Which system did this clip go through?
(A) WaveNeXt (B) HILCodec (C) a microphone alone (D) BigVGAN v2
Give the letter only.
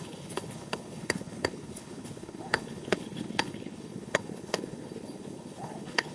B